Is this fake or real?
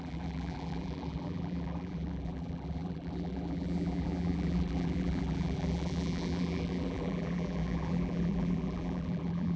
fake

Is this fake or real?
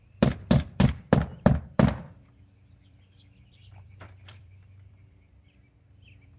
fake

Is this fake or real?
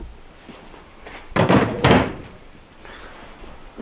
fake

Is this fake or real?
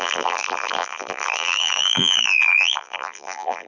fake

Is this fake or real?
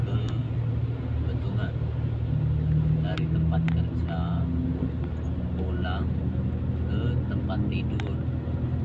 real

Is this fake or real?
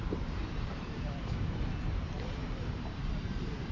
fake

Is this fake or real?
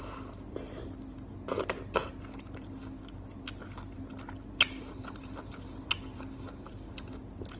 real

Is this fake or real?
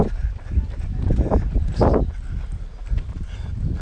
real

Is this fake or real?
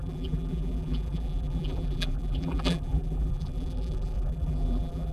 fake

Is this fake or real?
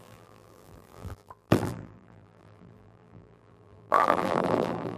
fake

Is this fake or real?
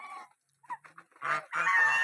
real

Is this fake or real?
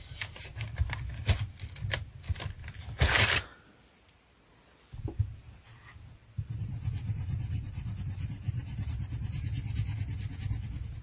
real